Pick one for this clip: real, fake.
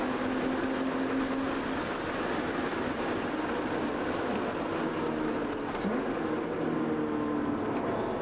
real